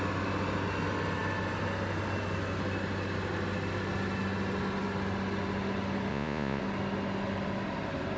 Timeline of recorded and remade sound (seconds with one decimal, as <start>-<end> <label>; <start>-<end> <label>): 0.0-6.1 recorded; 6.1-6.6 remade; 6.6-8.2 recorded